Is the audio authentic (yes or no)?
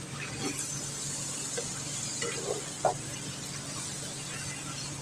yes